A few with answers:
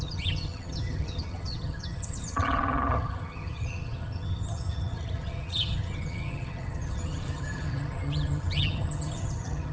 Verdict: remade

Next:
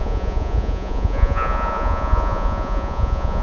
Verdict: remade